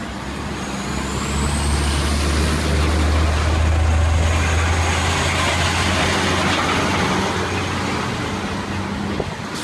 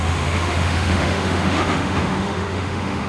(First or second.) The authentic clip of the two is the first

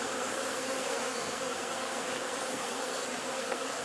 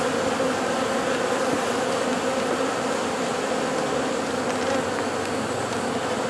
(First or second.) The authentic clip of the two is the second